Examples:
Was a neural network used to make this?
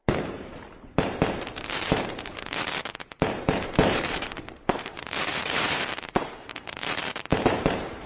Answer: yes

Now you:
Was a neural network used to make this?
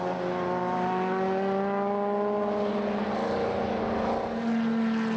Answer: no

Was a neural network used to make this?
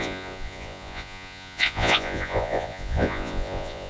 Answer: yes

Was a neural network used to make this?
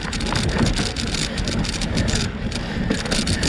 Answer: no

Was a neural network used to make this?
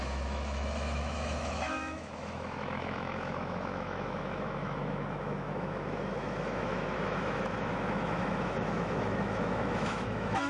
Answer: yes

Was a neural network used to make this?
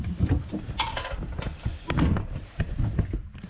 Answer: no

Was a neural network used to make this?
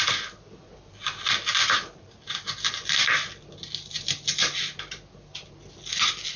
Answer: no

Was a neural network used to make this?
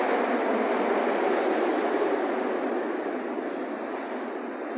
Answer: no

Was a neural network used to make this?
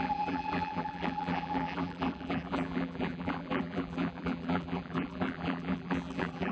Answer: yes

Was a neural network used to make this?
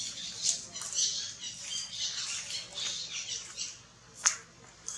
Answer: no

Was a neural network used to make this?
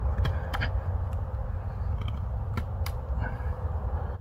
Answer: no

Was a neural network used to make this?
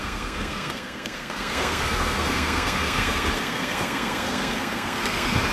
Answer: yes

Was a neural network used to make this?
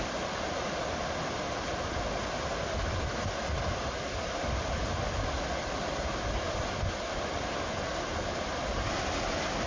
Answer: no